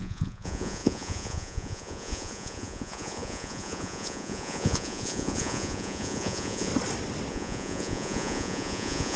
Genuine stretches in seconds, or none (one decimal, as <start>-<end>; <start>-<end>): 6.7-7.3